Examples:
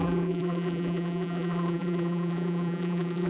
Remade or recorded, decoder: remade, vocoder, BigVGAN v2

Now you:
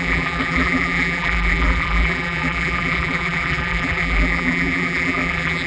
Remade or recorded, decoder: remade, vocoder, BigVGAN v2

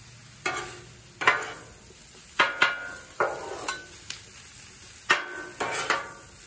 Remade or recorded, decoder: recorded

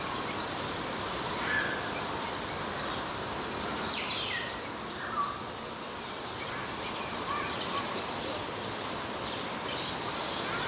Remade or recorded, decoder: recorded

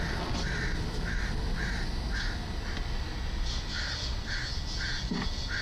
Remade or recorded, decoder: recorded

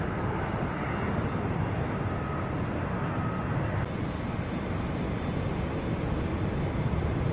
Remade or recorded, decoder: recorded